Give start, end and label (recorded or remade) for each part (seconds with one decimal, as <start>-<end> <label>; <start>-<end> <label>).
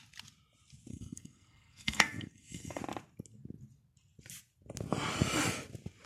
0.0-0.9 recorded; 0.9-2.8 remade; 2.8-6.1 recorded